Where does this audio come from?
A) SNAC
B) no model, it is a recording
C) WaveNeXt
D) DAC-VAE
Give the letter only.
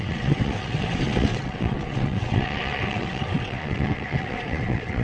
C